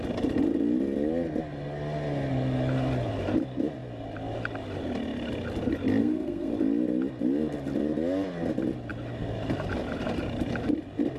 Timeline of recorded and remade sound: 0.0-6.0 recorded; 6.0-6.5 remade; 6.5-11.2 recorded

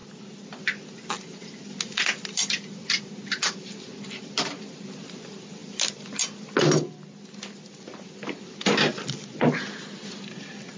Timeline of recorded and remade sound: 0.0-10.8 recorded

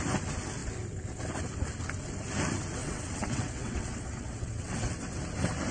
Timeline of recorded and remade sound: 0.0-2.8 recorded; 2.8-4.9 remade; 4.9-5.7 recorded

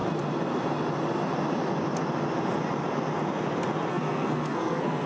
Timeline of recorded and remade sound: 0.0-3.9 recorded; 3.9-5.1 remade

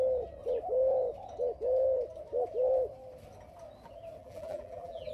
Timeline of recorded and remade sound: 0.0-4.2 recorded; 4.2-5.1 remade